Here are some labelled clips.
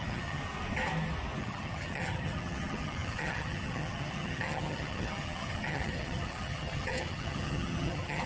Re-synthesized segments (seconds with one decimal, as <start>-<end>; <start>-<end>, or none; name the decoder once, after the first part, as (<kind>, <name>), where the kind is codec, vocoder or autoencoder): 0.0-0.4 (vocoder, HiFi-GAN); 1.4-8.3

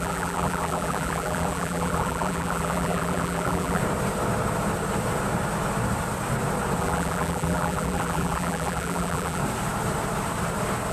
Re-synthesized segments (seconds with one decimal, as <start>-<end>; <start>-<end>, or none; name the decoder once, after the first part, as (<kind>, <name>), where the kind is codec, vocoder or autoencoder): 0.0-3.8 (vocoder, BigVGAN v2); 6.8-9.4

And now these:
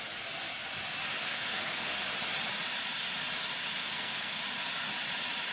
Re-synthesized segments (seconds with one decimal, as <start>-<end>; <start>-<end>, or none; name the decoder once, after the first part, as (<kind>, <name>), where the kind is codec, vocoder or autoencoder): 1.2-2.0 (codec, SNAC); 3.8-4.4

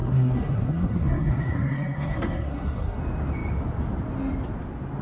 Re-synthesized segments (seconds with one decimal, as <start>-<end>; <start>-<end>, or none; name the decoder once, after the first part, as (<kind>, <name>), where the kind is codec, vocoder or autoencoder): 0.0-3.0 (codec, SNAC)